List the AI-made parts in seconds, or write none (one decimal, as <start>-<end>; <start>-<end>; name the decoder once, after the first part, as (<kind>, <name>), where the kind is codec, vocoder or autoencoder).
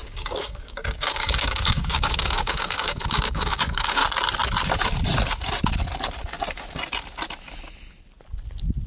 0.0-4.0 (codec, DAC)